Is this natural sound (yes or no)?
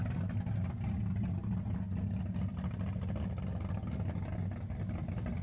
yes